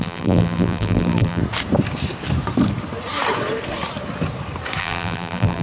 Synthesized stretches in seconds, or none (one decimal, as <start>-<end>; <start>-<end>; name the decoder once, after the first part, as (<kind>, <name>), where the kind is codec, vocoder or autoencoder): 0.0-1.4 (vocoder, BigVGAN v2); 4.8-5.6

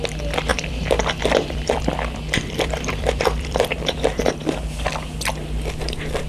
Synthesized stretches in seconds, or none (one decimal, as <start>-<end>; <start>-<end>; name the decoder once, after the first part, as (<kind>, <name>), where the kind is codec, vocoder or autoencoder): 0.5-4.3 (vocoder, BigVGAN v2)

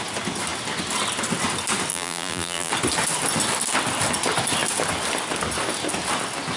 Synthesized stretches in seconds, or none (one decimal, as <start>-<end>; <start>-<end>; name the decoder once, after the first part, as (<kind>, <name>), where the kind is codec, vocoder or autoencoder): 1.9-2.7 (vocoder, BigVGAN v2)

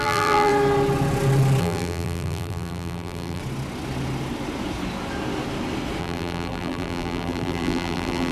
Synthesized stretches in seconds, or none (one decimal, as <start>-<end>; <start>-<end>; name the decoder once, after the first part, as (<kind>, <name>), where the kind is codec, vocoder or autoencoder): 0.0-0.5 (vocoder, BigVGAN v2); 1.6-3.4; 6.0-8.3